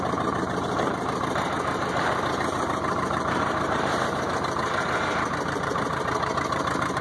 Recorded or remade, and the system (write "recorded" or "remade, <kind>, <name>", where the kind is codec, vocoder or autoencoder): remade, vocoder, BigVGAN v2